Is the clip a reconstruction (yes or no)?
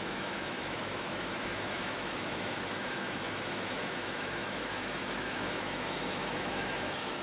yes